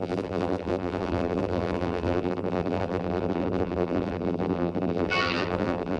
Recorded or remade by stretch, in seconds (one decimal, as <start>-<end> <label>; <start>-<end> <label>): 0.0-6.0 remade